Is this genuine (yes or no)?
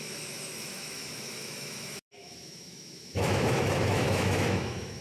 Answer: no